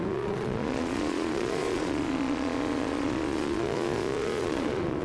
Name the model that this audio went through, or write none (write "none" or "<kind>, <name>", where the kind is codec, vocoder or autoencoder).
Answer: vocoder, Vocos